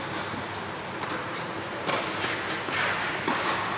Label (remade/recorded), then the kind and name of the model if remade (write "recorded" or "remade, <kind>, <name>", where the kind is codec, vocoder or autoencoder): recorded